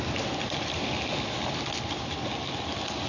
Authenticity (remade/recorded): recorded